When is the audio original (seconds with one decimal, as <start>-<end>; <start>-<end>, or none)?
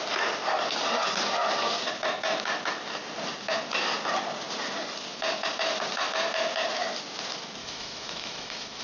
0.0-7.6